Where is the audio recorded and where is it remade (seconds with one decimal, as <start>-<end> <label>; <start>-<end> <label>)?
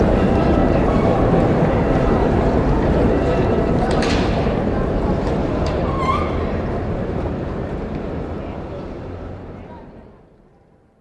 0.0-6.0 remade; 6.0-6.9 recorded; 6.9-11.0 remade